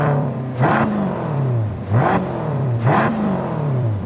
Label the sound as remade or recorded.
remade